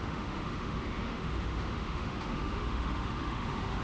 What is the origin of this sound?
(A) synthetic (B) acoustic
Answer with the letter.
A